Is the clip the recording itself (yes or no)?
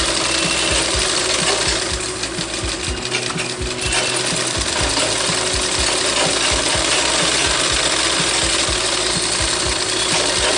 yes